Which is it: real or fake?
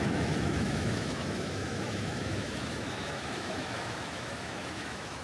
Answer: fake